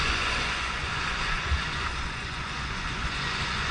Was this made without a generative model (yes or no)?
no